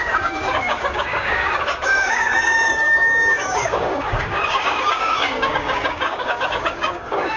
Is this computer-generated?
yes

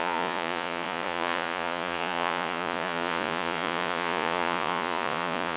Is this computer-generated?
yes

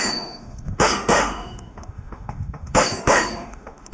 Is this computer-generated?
yes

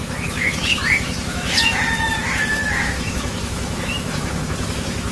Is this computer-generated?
yes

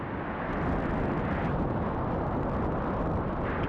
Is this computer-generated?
no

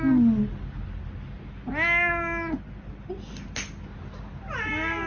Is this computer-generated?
no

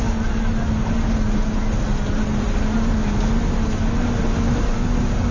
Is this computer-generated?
no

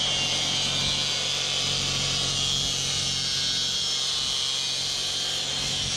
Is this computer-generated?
no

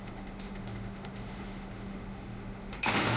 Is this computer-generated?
yes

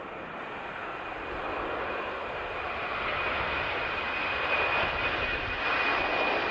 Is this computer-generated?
no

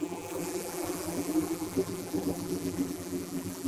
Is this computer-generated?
yes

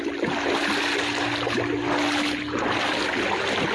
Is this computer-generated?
no